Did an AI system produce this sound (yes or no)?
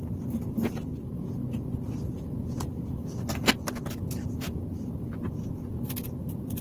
no